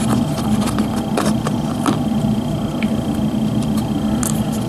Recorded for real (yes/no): yes